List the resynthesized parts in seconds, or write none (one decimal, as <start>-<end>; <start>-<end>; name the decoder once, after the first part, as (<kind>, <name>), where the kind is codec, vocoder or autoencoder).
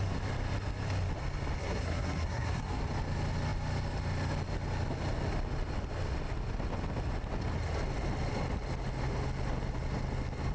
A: 1.6-2.8 (codec, SNAC)